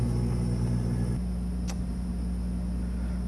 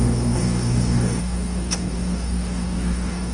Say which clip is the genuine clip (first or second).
first